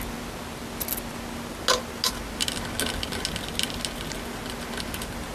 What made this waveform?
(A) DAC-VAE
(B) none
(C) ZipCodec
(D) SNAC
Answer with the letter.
B